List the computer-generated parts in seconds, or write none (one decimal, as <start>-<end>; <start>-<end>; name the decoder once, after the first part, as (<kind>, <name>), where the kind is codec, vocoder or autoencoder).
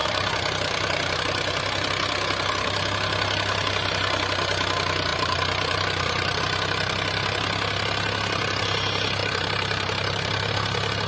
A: 0.0-1.2 (vocoder, BigVGAN v2); 5.1-6.4; 9.2-10.5